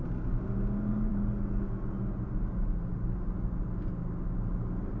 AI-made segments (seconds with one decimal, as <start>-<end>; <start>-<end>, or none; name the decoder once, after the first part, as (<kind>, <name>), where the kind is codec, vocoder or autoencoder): none